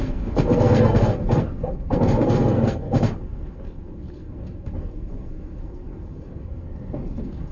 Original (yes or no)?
no